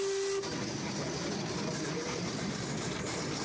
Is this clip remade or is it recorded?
recorded